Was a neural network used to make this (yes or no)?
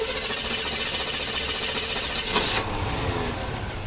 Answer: no